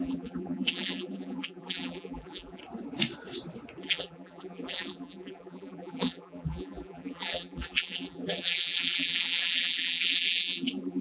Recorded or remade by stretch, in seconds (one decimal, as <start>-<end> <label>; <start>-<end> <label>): 0.0-2.6 remade; 2.6-3.8 recorded; 3.8-11.0 remade

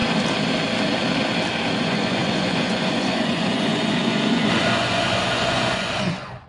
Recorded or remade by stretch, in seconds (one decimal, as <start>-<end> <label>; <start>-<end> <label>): 0.0-1.8 recorded; 1.8-6.5 remade